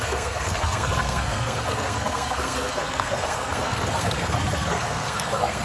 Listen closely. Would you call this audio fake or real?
fake